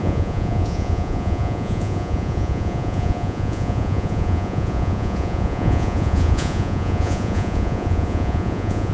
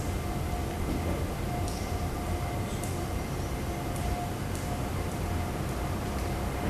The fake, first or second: first